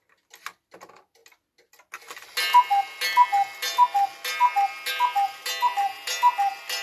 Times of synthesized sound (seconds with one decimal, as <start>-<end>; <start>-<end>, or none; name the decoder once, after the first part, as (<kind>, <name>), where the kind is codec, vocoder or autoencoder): none